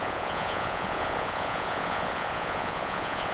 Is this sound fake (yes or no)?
yes